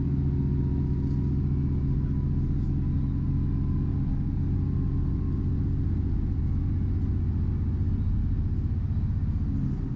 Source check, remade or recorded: recorded